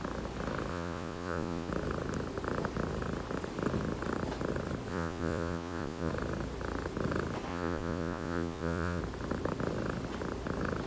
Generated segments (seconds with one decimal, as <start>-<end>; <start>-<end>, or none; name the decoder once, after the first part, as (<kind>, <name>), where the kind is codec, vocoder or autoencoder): 0.7-1.7 (vocoder, Vocos); 4.9-6.1; 7.5-9.0